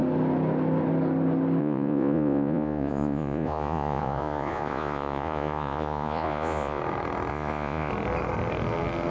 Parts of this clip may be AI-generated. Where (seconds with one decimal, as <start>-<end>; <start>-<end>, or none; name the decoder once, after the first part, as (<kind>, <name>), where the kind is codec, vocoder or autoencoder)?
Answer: 1.6-6.8 (vocoder, Vocos); 7.3-7.9

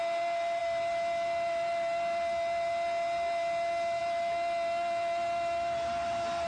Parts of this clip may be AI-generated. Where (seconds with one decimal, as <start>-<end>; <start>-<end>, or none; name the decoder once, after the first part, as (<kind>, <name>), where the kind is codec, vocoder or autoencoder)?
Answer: none

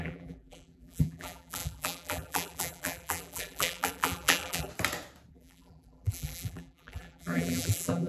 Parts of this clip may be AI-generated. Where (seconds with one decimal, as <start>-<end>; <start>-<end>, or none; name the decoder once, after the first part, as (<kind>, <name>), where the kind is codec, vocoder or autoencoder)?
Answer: 0.0-4.7 (vocoder, BigVGAN v2); 5.3-8.1

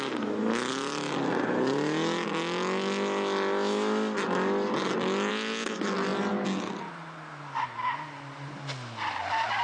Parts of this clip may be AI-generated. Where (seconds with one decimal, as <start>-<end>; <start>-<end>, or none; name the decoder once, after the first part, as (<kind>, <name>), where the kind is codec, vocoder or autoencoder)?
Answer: none

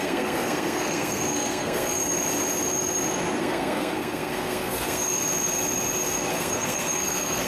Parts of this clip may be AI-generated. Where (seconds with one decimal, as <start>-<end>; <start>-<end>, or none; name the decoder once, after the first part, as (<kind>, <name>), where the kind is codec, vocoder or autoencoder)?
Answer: 0.0-2.0 (codec, SNAC); 3.4-5.2; 6.3-7.5

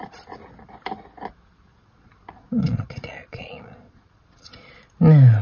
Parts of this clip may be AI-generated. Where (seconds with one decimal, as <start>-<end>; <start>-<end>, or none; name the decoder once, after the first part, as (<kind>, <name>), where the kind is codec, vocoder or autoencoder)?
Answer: 1.7-4.9 (vocoder, Vocos)